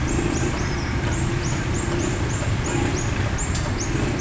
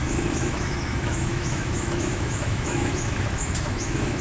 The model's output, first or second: second